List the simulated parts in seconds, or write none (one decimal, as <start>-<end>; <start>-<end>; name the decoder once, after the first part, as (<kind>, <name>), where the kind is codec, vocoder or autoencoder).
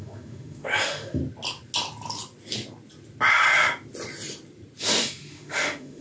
0.0-1.2 (autoencoder, DAC-VAE); 4.8-6.0